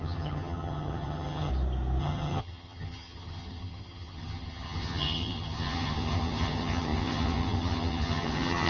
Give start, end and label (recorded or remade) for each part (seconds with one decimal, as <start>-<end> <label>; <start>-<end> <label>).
0.0-1.5 remade; 1.5-2.0 recorded; 2.0-8.7 remade